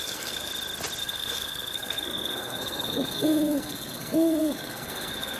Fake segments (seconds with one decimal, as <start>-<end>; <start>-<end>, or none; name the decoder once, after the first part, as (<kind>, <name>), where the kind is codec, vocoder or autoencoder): 0.0-0.5 (codec, SNAC); 1.0-5.4